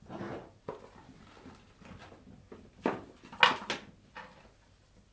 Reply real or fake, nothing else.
real